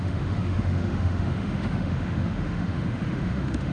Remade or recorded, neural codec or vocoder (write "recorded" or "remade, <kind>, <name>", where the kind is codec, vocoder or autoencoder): remade, autoencoder, DAC-VAE